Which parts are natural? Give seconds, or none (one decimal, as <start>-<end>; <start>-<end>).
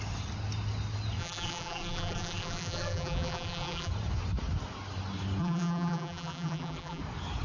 0.0-1.2; 3.9-5.4; 7.0-7.4